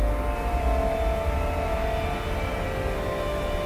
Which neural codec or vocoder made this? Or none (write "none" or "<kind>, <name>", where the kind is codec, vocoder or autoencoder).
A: none